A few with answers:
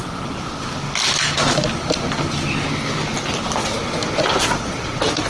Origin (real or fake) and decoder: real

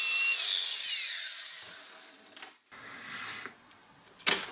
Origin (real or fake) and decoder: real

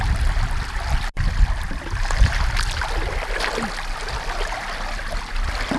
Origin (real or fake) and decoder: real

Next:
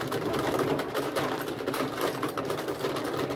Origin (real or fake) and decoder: real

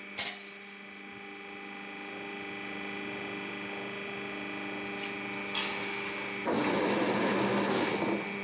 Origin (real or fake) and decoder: real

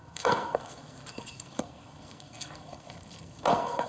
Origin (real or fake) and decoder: fake, codec, SNAC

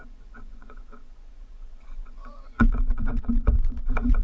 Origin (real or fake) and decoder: fake, vocoder, Vocos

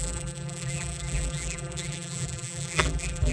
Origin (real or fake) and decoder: fake, vocoder, BigVGAN v2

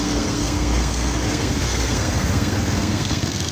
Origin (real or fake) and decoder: fake, codec, SNAC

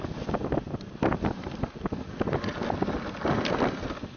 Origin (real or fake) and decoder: real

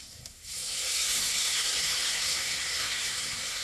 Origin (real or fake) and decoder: fake, codec, SNAC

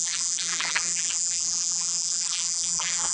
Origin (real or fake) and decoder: fake, vocoder, BigVGAN v2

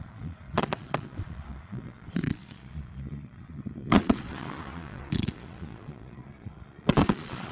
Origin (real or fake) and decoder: fake, vocoder, Vocos